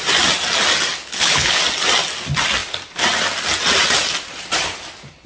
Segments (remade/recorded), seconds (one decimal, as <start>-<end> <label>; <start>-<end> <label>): 0.0-1.0 recorded; 1.0-1.6 remade; 1.6-5.3 recorded